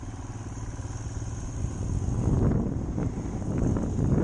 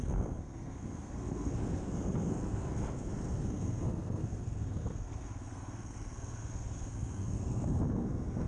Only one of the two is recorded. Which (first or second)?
first